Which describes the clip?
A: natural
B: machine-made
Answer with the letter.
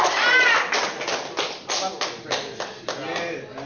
A